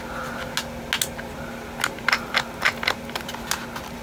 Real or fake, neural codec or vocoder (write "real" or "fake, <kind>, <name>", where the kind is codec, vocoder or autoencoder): real